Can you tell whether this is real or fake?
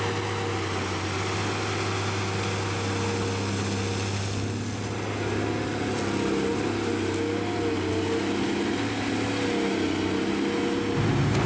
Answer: real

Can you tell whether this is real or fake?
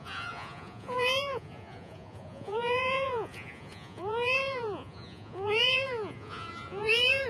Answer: fake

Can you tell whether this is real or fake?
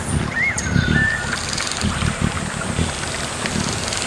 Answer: real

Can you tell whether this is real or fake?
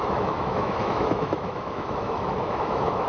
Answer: fake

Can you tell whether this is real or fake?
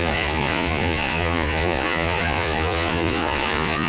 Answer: fake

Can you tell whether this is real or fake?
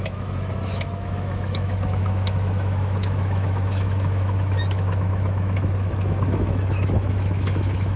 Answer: fake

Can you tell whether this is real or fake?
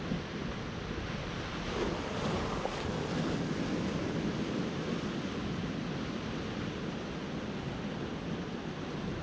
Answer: real